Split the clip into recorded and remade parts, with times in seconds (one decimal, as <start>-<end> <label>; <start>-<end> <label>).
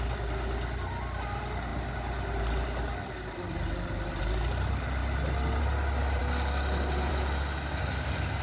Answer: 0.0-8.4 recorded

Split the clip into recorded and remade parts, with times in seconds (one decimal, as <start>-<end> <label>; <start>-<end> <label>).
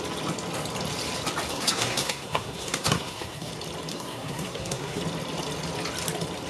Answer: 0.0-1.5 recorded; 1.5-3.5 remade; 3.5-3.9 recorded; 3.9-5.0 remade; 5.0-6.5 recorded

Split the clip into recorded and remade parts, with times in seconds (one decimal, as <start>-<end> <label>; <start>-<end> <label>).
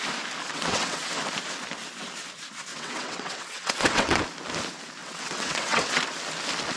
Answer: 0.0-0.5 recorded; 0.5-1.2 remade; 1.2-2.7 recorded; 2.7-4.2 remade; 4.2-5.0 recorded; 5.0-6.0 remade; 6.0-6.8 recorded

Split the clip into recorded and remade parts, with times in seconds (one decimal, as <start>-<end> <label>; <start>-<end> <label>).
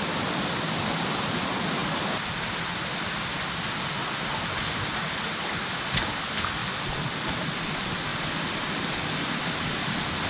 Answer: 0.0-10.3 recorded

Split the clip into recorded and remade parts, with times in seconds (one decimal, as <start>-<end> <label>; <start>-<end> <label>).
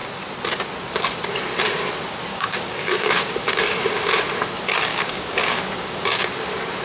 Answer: 0.0-2.3 recorded; 2.3-4.1 remade; 4.1-4.9 recorded; 4.9-6.2 remade; 6.2-6.8 recorded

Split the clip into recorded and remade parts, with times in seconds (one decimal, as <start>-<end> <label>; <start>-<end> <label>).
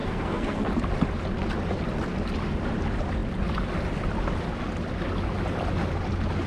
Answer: 0.0-0.7 remade; 0.7-6.5 recorded